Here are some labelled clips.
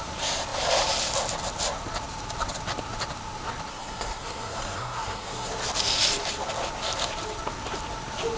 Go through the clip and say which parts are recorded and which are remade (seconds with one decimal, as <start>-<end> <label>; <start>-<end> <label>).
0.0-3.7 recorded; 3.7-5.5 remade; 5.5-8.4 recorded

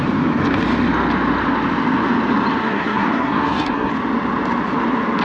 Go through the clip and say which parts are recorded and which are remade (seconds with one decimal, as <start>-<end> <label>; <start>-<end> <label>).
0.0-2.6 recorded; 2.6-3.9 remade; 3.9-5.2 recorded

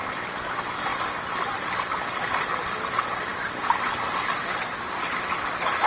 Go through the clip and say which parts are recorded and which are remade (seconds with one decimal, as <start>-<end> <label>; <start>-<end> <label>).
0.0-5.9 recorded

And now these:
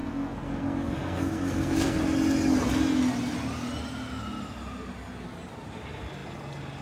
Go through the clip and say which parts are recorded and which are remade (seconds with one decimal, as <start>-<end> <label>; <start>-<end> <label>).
0.0-2.0 remade; 2.0-6.8 recorded